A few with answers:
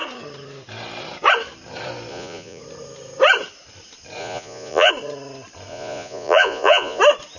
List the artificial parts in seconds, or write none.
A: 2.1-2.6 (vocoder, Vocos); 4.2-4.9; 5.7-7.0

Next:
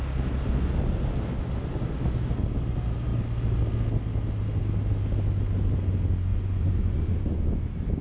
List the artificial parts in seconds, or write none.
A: 6.3-7.5 (vocoder, Vocos)

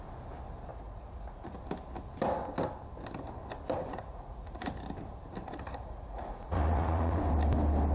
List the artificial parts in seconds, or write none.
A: 0.7-1.6 (vocoder, Vocos); 4.1-4.7; 5.8-7.2

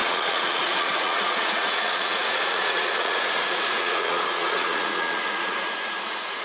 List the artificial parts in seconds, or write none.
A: 0.0-6.4 (vocoder, Vocos)

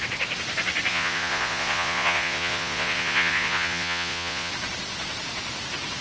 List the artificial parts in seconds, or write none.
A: 0.9-4.5 (vocoder, Vocos)

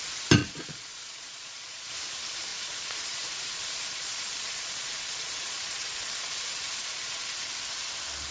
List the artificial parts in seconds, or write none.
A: 0.4-1.9 (vocoder, Vocos); 2.5-7.5

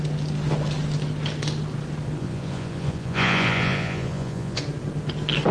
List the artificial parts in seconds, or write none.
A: 2.2-4.6 (vocoder, Vocos)